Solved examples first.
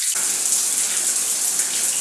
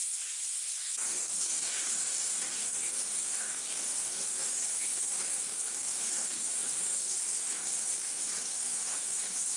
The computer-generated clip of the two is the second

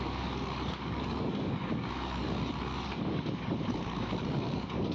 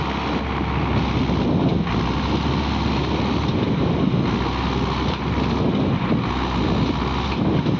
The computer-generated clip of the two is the first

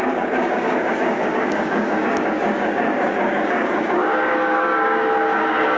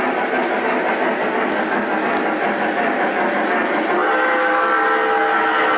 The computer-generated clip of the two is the first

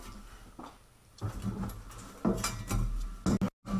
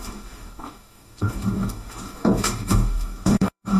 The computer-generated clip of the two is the second